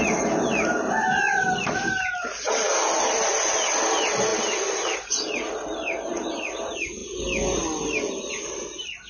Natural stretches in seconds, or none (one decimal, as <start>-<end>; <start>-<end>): 0.0-9.1